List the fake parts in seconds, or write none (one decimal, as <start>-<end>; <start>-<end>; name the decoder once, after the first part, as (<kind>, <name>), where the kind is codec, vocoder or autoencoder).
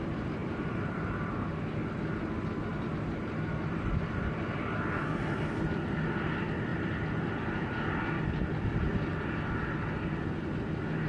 0.4-1.5 (vocoder, BigVGAN v2); 2.7-4.2